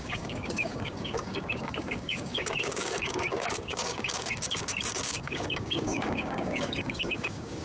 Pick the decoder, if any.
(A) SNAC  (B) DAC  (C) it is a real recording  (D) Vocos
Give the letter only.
B